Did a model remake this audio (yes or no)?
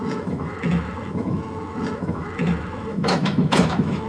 yes